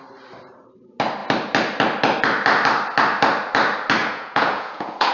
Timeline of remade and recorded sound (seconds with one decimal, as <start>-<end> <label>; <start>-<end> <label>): 0.0-4.0 recorded; 4.0-5.1 remade